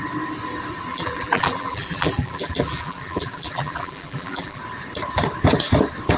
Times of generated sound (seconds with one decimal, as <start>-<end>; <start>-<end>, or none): 0.9-4.6

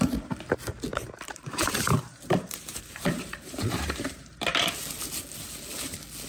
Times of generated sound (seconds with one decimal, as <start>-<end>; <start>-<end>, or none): 0.9-4.7

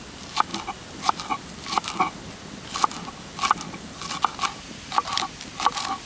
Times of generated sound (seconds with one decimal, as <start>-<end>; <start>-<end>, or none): none

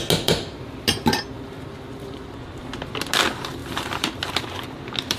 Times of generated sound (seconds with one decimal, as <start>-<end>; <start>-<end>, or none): 1.3-2.7; 3.6-4.3